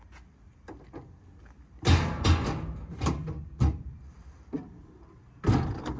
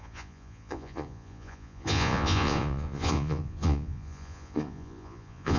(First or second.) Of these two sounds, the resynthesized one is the second